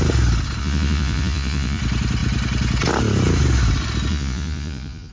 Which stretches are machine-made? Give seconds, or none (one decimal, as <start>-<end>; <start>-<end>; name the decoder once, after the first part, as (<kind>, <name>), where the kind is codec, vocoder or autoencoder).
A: 0.6-1.8 (vocoder, Vocos); 4.1-5.1